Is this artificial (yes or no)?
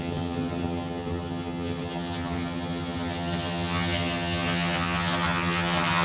yes